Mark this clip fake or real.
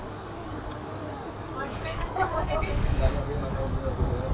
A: fake